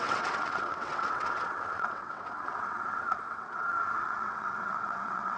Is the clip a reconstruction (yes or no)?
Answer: yes